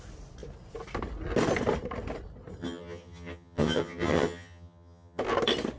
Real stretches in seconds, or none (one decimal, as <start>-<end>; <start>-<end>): 0.0-2.6; 5.2-5.8